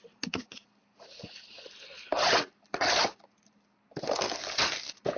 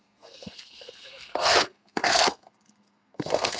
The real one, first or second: first